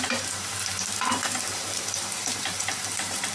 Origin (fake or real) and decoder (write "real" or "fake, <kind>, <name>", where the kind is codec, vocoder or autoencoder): fake, vocoder, BigVGAN v2